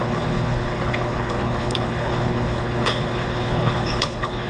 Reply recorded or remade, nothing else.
remade